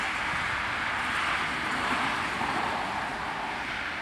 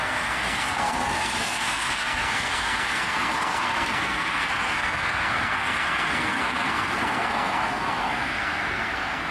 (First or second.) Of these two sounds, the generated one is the second